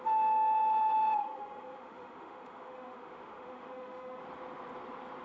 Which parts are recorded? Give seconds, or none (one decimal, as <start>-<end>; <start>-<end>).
0.0-1.2; 4.2-5.2

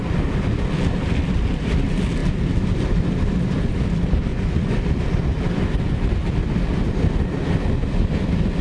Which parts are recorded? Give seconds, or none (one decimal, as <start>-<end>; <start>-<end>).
0.0-4.3; 4.8-8.6

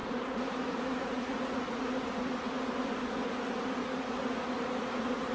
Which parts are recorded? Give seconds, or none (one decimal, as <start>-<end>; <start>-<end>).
2.7-3.8

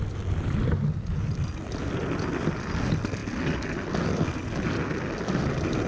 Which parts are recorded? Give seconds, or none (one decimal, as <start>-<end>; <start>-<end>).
0.0-5.9

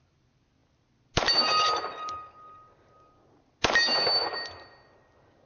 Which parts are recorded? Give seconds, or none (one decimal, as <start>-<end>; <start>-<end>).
0.0-5.5